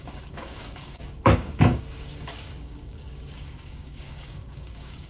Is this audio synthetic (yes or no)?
yes